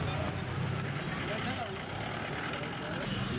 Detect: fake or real real